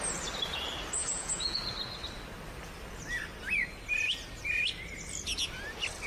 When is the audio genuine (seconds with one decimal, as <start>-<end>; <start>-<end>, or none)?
0.0-1.0; 1.6-6.1